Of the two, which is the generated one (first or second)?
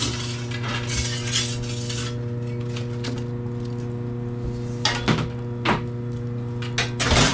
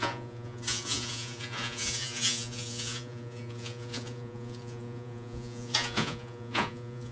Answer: second